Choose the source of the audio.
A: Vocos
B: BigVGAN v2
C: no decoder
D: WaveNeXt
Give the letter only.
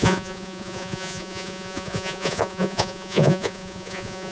A